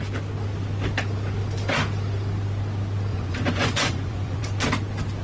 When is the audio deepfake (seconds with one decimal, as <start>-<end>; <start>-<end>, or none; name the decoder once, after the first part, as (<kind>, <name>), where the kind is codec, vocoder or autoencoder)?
3.1-4.4 (vocoder, Vocos)